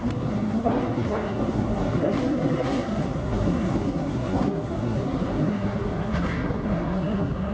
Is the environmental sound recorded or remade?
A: remade